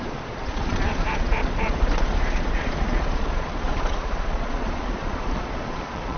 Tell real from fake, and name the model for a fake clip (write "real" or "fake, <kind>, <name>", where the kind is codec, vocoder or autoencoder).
fake, vocoder, Vocos